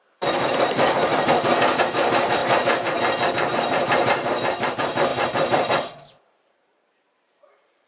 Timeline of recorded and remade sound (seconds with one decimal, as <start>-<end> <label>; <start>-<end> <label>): 0.0-2.4 remade; 2.4-3.3 recorded; 3.3-7.9 remade